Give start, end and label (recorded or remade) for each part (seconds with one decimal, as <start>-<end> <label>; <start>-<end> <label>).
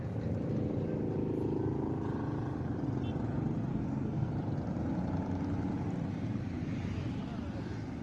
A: 0.0-3.7 recorded; 3.7-4.3 remade; 4.3-8.0 recorded